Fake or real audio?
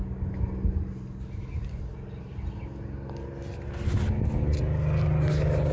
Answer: real